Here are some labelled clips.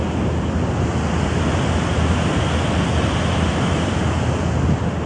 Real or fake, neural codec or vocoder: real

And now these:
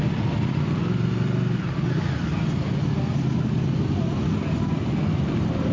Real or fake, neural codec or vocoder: real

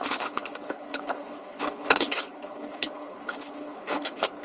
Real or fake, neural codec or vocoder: fake, codec, HILCodec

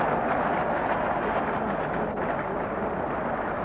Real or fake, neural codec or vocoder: real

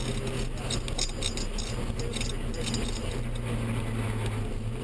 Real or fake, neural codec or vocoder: real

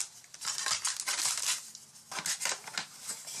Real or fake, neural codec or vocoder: real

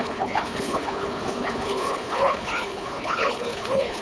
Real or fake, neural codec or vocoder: fake, codec, HILCodec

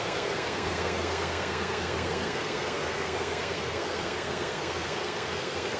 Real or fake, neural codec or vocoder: fake, codec, SNAC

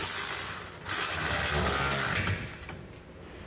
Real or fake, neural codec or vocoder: real